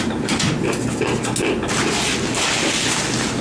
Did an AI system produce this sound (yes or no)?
no